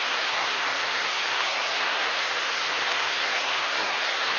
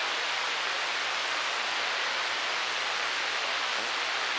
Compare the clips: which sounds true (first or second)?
second